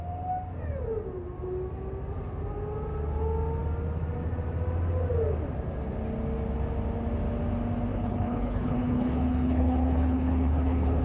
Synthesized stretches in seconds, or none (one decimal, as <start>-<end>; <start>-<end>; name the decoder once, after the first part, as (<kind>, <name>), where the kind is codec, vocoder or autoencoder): 7.9-11.0 (codec, HILCodec)